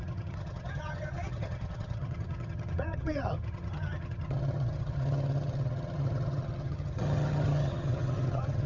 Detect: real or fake fake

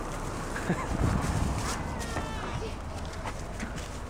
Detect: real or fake real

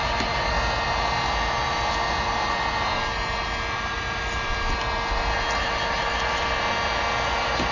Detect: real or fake real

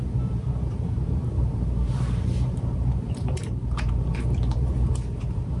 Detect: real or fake fake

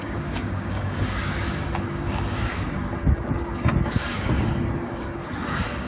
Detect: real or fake fake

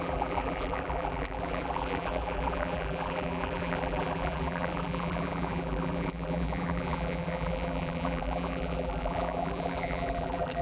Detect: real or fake fake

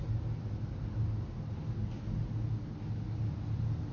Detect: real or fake real